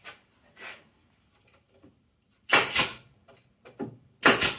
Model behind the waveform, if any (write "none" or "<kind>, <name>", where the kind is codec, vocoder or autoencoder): none